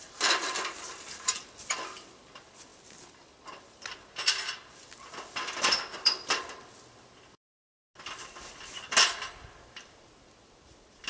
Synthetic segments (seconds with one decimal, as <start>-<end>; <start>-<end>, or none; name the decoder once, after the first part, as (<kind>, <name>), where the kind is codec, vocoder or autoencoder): none